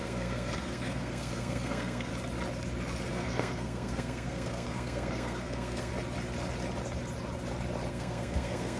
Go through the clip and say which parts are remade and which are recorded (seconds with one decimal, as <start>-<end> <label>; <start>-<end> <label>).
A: 0.0-2.1 remade; 2.1-3.1 recorded; 3.1-5.9 remade; 5.9-7.9 recorded; 7.9-8.8 remade